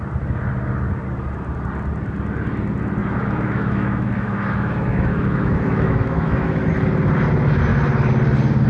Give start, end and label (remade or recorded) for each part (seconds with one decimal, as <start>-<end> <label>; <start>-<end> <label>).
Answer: 0.0-3.0 recorded; 3.0-6.7 remade; 6.7-8.7 recorded